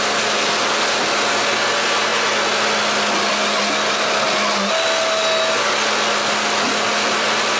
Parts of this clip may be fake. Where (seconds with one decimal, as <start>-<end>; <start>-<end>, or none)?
none